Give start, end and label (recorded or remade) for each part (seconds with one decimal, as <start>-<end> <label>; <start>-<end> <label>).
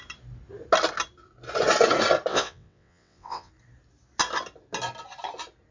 0.0-2.3 recorded; 2.3-3.5 remade; 3.5-5.7 recorded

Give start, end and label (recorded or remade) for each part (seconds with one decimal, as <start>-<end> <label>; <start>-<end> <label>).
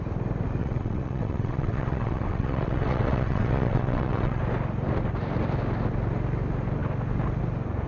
0.0-0.6 recorded; 0.6-4.4 remade; 4.4-7.9 recorded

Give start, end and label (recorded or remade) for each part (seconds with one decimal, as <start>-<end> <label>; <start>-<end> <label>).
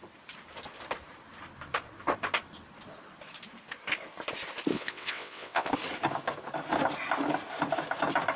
0.0-4.7 recorded; 4.7-5.7 remade; 5.7-8.4 recorded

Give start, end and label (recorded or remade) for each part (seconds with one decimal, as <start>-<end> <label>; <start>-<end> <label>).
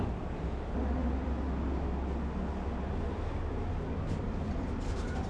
0.0-5.3 recorded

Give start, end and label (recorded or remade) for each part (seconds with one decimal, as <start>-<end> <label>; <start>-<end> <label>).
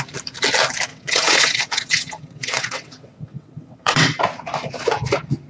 0.0-0.9 recorded; 0.9-4.2 remade; 4.2-5.5 recorded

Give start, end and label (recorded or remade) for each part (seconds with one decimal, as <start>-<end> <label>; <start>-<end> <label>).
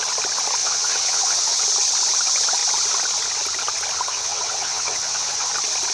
0.0-0.6 recorded; 0.6-1.6 remade; 1.6-4.1 recorded; 4.1-5.5 remade; 5.5-5.9 recorded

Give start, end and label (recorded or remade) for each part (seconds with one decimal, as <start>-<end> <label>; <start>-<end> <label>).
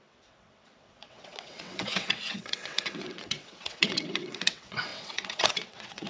0.0-6.1 remade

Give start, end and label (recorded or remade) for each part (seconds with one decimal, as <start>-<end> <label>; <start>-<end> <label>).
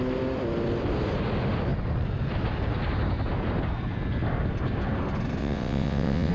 0.0-5.4 recorded; 5.4-6.3 remade